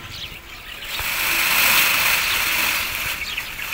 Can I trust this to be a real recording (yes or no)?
yes